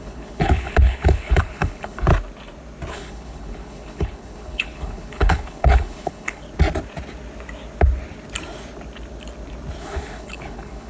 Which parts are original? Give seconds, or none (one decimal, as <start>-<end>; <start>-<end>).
2.1-2.9; 6.4-9.8